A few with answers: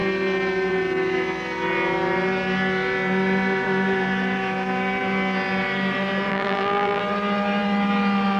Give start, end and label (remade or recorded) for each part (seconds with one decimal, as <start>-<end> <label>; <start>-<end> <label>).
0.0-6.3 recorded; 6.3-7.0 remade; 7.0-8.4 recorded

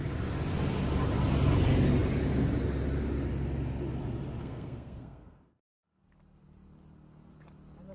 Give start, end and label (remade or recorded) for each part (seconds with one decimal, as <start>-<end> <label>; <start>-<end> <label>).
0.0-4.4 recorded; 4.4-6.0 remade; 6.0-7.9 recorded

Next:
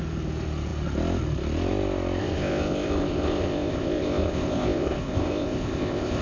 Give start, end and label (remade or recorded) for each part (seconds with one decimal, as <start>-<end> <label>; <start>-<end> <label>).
0.0-2.2 recorded; 2.2-6.2 remade

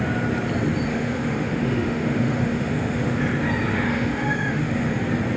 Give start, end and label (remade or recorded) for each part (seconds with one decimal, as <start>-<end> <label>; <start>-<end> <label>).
0.0-0.9 recorded; 0.9-3.2 remade; 3.2-3.7 recorded; 3.7-4.9 remade; 4.9-5.4 recorded